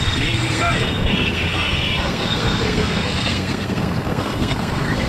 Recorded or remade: remade